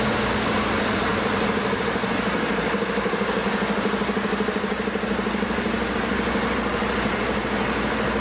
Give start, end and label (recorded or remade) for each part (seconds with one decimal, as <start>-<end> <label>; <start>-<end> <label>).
0.0-8.2 recorded